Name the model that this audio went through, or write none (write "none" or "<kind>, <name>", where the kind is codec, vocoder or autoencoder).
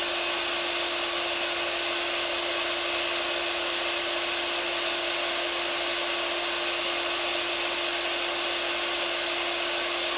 none